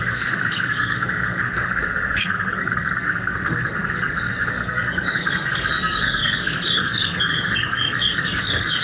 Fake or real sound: fake